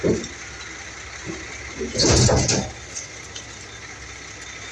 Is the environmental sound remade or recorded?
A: recorded